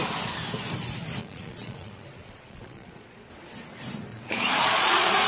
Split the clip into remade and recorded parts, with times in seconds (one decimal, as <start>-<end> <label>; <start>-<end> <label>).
0.0-1.2 recorded; 1.2-3.3 remade; 3.3-4.1 recorded; 4.1-5.3 remade